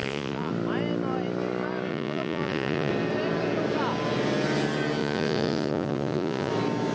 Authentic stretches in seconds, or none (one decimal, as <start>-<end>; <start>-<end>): 0.5-1.9; 2.9-5.0; 6.5-6.9